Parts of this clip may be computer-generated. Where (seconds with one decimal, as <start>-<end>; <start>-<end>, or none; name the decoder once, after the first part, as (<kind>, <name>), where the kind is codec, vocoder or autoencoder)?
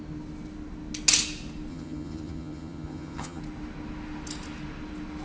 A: 1.7-3.4 (vocoder, HiFi-GAN)